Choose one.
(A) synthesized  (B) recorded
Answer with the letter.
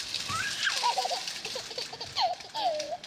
B